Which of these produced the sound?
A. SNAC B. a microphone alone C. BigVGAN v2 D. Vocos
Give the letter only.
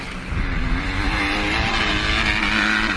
B